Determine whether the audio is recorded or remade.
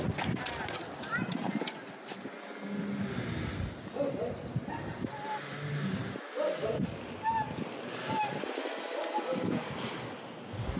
recorded